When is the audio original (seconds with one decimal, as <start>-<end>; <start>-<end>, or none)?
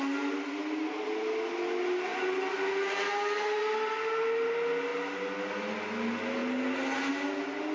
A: 0.0-7.7